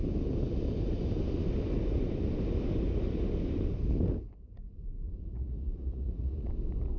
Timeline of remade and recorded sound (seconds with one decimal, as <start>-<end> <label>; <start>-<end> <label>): 0.0-4.8 recorded; 4.8-6.5 remade; 6.5-7.0 recorded